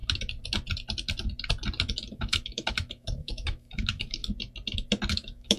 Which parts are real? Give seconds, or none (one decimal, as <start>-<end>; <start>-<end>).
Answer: 0.0-2.1; 4.2-5.1